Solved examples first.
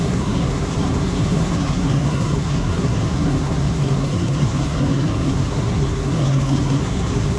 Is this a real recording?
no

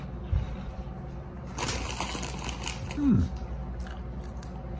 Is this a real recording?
yes